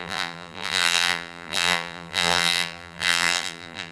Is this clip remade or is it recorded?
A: remade